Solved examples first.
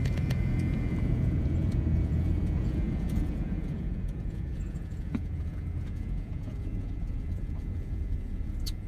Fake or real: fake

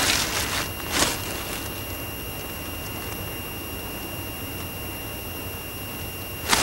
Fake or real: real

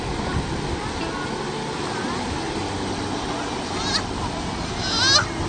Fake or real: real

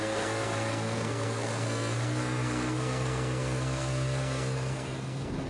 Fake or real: fake